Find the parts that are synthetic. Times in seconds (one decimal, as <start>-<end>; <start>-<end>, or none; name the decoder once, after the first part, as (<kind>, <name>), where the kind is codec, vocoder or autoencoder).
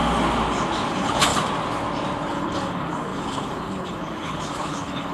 0.9-1.3 (codec, HILCodec); 2.3-5.1